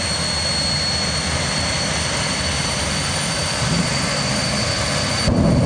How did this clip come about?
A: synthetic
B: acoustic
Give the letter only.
B